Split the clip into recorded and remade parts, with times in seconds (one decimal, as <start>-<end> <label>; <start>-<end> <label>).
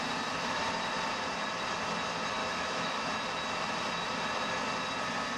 0.0-2.4 recorded; 2.4-3.1 remade; 3.1-5.4 recorded